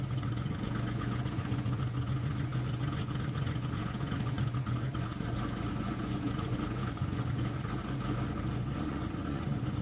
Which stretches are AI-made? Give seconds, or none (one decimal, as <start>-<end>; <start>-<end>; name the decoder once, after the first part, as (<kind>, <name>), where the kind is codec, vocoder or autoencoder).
0.0-9.8 (vocoder, Vocos)